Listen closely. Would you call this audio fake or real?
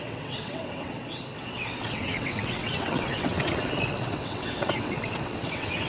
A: fake